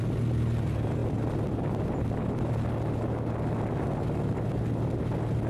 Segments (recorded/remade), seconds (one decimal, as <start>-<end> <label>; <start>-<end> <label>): 0.0-5.5 recorded